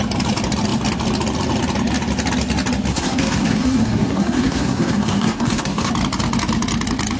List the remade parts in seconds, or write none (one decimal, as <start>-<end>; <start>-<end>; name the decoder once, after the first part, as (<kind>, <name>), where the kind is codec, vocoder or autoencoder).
2.9-5.9 (codec, SNAC)